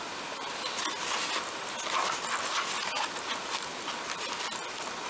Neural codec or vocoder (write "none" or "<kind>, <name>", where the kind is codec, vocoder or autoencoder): none